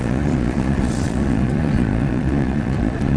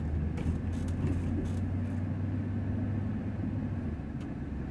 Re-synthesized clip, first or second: first